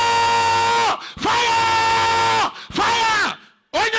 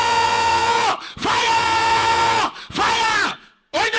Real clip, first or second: first